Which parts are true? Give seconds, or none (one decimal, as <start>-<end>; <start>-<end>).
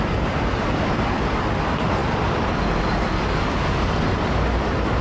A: 0.0-2.0; 2.8-5.0